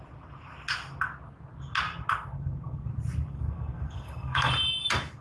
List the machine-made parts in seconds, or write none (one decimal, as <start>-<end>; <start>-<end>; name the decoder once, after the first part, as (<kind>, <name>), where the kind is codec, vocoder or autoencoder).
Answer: 2.3-2.9 (codec, SNAC); 3.3-4.5